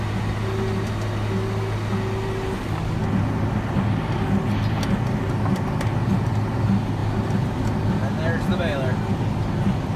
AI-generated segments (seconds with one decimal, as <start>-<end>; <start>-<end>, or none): none